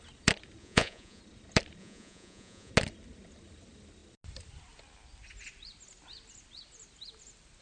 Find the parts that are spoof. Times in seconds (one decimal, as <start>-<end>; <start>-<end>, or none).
0.6-1.2; 1.8-2.7